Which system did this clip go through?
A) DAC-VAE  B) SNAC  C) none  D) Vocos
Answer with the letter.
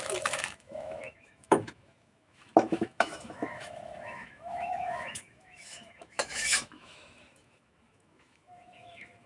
A